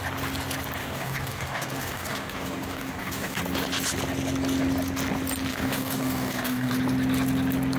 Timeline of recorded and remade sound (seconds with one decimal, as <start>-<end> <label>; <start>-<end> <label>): 0.0-0.8 recorded; 0.8-3.4 remade; 3.4-5.5 recorded; 5.5-6.7 remade; 6.7-7.8 recorded